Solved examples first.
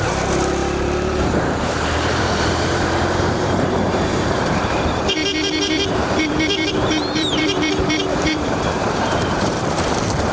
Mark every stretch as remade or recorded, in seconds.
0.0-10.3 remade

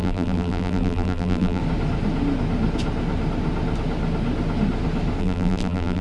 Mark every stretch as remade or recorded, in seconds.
0.0-1.6 remade; 1.6-5.2 recorded; 5.2-6.0 remade

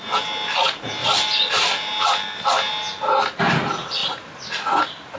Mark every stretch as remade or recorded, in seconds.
0.0-4.0 recorded; 4.0-4.8 remade; 4.8-5.2 recorded

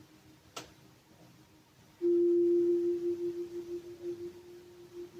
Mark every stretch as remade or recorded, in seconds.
0.0-5.2 recorded

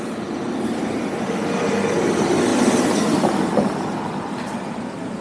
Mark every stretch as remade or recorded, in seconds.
0.0-2.5 recorded; 2.5-3.4 remade; 3.4-5.2 recorded

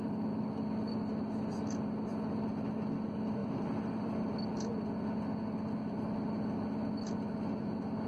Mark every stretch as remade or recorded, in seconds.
0.0-3.4 recorded; 3.4-4.5 remade; 4.5-8.1 recorded